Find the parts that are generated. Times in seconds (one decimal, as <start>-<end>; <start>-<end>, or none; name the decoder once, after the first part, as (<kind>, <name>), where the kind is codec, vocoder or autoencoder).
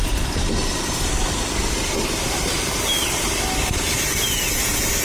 none